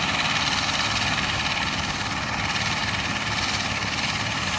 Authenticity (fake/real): real